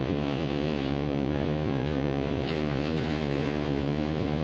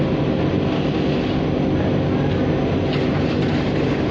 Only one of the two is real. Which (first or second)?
second